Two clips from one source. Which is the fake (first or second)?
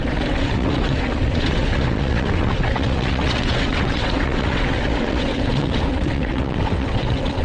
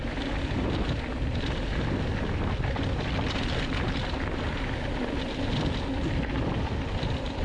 first